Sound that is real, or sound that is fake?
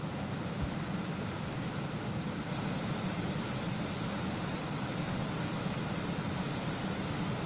real